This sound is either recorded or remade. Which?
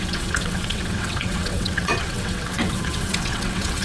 remade